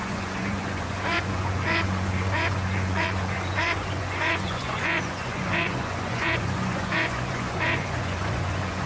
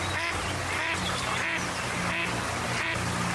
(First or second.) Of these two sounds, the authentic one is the second